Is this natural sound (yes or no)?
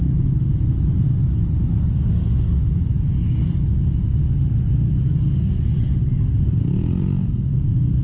yes